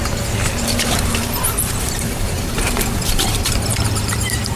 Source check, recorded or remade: remade